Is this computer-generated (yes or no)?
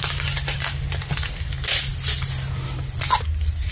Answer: no